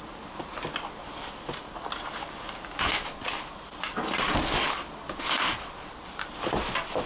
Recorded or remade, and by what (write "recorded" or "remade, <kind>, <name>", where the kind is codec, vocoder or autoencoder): recorded